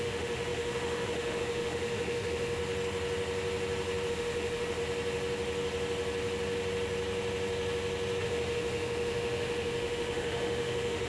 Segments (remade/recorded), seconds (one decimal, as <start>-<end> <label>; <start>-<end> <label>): 0.0-2.6 remade; 2.6-4.1 recorded; 4.1-4.8 remade; 4.8-8.2 recorded; 8.2-11.1 remade

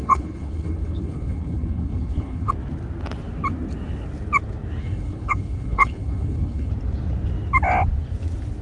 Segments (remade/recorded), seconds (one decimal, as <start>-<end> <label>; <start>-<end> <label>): 0.0-2.5 remade; 2.5-4.8 recorded; 4.8-6.7 remade; 6.7-8.6 recorded

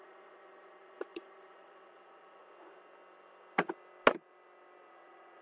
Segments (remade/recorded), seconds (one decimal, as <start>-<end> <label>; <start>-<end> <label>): 0.0-2.4 remade; 2.4-4.9 recorded; 4.9-5.4 remade

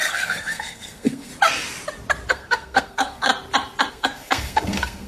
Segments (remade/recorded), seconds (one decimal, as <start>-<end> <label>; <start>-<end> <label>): 0.0-1.3 remade; 1.3-2.3 recorded; 2.3-3.3 remade; 3.3-3.9 recorded; 3.9-5.1 remade

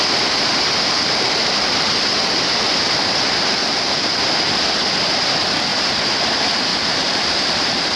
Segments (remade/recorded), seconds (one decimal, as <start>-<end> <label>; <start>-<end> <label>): 0.0-3.6 recorded; 3.6-4.2 remade; 4.2-5.7 recorded; 5.7-6.2 remade; 6.2-6.7 recorded; 6.7-8.0 remade